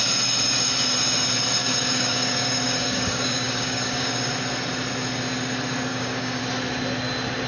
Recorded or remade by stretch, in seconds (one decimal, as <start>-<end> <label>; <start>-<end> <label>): 0.0-1.6 recorded; 1.6-4.3 remade; 4.3-5.9 recorded; 5.9-6.4 remade; 6.4-7.5 recorded